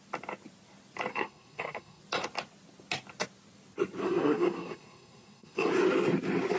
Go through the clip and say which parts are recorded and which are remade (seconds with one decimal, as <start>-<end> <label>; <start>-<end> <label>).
0.0-1.1 recorded; 1.1-2.0 remade; 2.0-4.0 recorded; 4.0-5.7 remade; 5.7-6.6 recorded